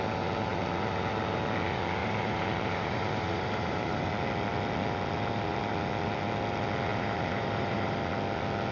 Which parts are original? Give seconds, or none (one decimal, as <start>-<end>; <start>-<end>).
0.0-2.0; 4.1-6.9; 8.0-8.7